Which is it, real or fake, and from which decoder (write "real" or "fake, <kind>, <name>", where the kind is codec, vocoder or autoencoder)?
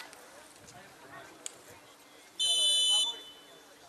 real